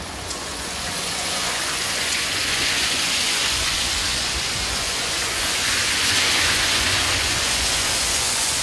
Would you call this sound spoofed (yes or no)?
yes